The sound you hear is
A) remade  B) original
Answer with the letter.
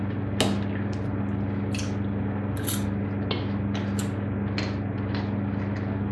B